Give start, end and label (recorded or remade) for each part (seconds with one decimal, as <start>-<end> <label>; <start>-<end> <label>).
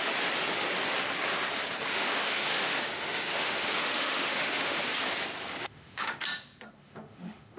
0.0-1.9 recorded; 1.9-4.8 remade; 4.8-5.6 recorded; 5.6-6.2 remade; 6.2-6.8 recorded; 6.8-7.6 remade